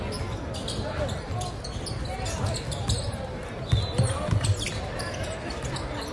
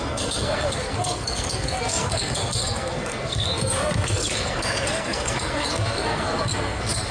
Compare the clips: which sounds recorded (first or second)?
first